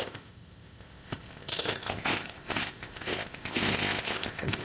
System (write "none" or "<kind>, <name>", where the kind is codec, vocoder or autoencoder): codec, ZipCodec